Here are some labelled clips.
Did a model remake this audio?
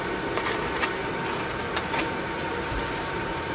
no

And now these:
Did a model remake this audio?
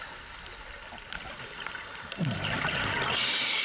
no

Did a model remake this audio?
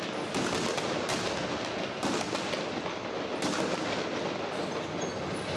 no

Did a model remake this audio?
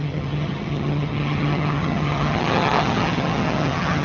yes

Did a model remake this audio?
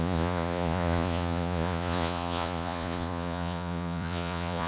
yes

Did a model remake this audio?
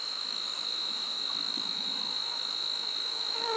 yes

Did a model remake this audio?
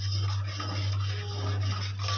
no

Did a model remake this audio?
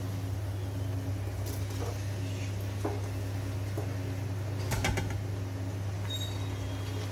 no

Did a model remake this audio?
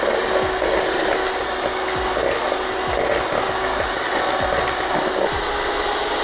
no